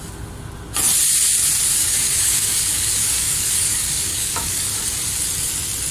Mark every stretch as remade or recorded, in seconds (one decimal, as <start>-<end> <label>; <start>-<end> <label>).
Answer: 0.0-1.7 recorded; 1.7-4.7 remade; 4.7-5.9 recorded